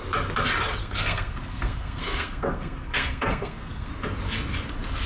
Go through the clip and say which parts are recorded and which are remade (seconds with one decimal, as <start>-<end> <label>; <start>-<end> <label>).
0.0-0.8 recorded; 0.8-3.9 remade; 3.9-5.1 recorded